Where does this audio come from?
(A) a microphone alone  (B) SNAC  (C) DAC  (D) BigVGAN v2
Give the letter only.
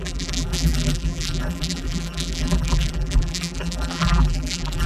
D